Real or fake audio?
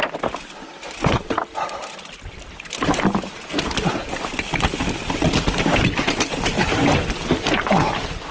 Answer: real